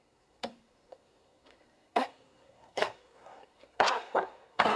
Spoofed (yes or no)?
yes